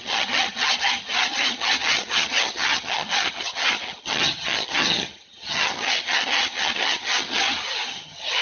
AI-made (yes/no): yes